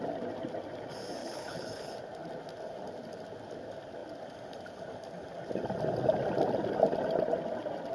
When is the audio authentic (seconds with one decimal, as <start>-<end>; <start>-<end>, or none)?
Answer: 0.0-1.2; 1.9-7.9